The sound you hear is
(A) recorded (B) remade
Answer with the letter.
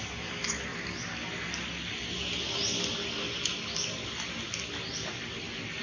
A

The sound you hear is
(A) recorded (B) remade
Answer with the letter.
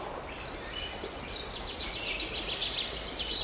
A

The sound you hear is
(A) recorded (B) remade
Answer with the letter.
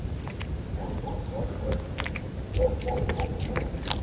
A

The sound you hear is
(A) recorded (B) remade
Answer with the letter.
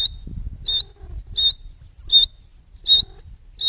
A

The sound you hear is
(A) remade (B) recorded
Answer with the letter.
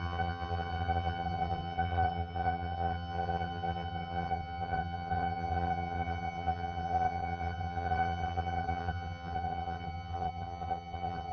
A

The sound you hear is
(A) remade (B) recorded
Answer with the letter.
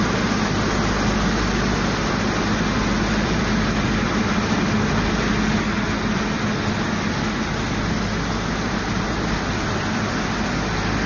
B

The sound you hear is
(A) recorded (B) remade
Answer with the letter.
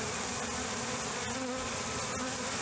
A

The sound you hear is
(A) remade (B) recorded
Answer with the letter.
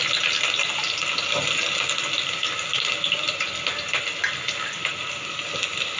B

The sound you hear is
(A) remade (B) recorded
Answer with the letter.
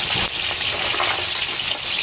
B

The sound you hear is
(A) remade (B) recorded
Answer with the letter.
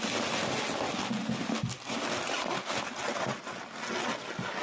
B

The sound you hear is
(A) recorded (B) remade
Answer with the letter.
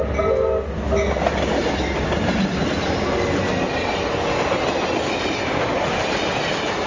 A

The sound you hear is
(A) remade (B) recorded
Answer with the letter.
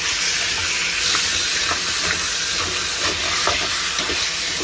B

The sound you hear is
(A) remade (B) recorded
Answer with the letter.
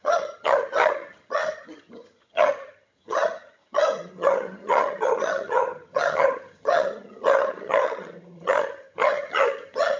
A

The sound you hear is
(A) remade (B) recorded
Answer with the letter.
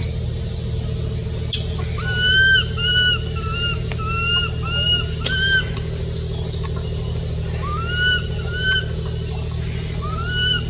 B